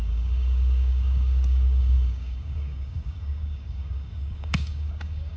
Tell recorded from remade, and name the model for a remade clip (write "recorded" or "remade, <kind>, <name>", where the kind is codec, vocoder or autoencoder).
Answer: remade, codec, DAC